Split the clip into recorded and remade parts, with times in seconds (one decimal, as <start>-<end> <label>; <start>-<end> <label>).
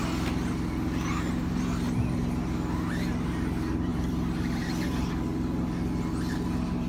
0.0-3.9 recorded; 3.9-4.9 remade; 4.9-6.9 recorded